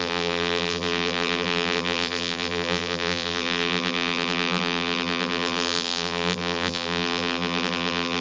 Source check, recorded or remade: remade